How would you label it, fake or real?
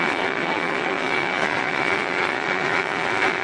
fake